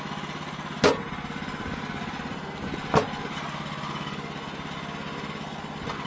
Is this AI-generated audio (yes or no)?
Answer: no